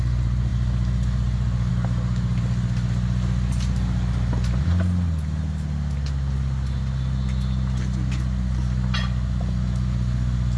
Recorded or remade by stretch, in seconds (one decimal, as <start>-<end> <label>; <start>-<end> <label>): 0.0-10.6 recorded